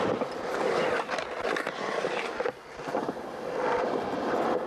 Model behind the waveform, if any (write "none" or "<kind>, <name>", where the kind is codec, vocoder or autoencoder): none